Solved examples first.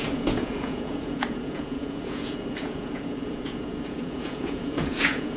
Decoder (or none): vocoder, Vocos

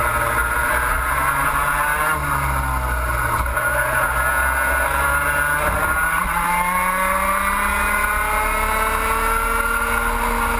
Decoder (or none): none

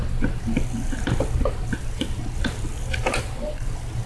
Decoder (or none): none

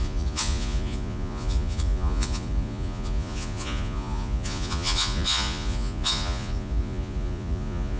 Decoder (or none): vocoder, Vocos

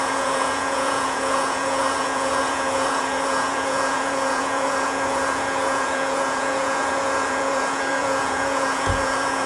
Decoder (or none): vocoder, Vocos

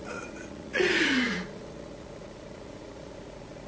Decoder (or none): vocoder, Vocos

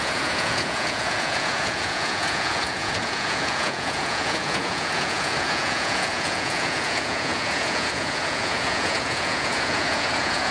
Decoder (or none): vocoder, Vocos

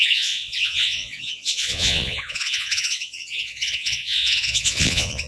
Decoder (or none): vocoder, Vocos